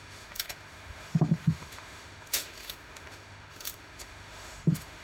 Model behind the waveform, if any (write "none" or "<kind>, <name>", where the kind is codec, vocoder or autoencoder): autoencoder, DAC-VAE